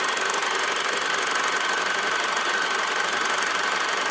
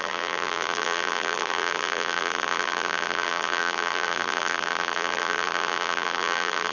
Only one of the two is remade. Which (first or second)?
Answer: second